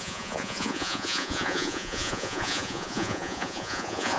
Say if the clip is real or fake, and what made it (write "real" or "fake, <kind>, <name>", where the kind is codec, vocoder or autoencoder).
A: fake, vocoder, Vocos